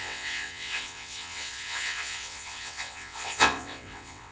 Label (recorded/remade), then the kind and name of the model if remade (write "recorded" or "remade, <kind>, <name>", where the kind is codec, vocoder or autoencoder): remade, vocoder, WaveNeXt